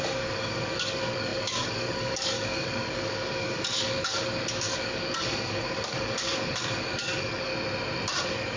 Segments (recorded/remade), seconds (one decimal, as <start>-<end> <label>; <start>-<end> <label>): 0.0-7.5 remade; 7.5-8.2 recorded; 8.2-8.6 remade